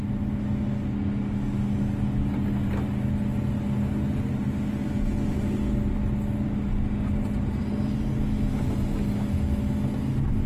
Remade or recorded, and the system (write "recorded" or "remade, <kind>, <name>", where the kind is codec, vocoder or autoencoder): recorded